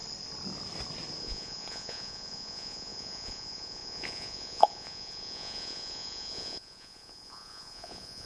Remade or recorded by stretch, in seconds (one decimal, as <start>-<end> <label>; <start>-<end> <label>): 0.0-1.2 recorded; 1.2-8.3 remade